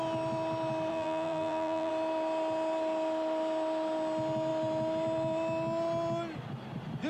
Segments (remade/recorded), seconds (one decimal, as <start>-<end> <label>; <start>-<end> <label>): 0.0-0.9 recorded; 0.9-1.9 remade; 1.9-7.1 recorded